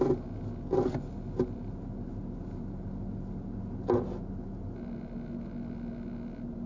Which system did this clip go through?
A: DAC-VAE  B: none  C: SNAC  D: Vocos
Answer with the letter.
B